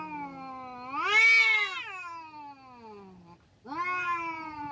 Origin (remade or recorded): recorded